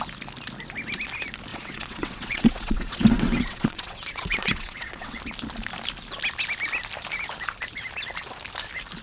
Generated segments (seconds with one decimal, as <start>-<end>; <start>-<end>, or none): 1.5-5.2